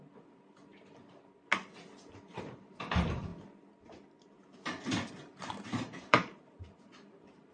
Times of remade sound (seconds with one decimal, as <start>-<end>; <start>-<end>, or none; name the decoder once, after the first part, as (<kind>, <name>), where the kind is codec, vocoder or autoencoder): 0.0-0.7 (vocoder, BigVGAN v2); 2.4-3.3; 5.1-7.5